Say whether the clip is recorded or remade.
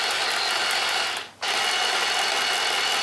recorded